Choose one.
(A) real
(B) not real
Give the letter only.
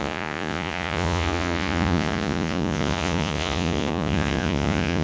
B